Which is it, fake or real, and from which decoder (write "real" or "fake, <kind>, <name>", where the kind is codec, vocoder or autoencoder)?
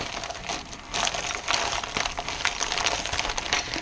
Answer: real